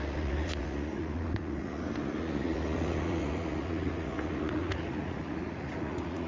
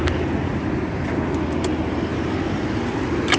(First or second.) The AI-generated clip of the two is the first